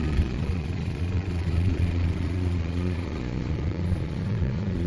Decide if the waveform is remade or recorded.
remade